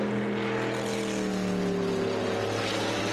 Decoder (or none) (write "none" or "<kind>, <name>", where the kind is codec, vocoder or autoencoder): none